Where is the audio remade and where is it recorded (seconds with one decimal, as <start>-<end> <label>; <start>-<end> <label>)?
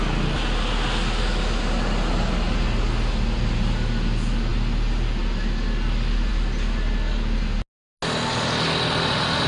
0.0-9.5 recorded